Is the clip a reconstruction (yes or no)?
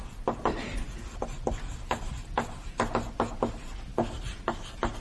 no